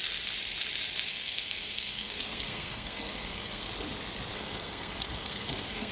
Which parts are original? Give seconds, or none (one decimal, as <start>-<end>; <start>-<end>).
0.0-1.1; 3.7-4.3